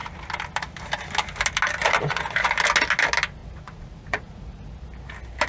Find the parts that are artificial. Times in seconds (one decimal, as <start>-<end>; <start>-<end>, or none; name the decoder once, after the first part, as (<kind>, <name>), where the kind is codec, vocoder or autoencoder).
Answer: 3.4-4.7 (vocoder, Vocos)